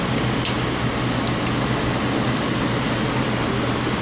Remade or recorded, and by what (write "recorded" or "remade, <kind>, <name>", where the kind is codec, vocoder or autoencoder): recorded